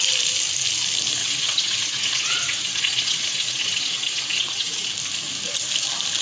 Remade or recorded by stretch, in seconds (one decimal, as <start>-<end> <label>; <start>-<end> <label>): 0.0-1.2 recorded; 1.2-4.9 remade; 4.9-6.2 recorded